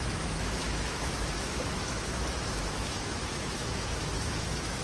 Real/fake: fake